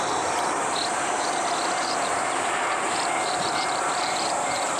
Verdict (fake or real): fake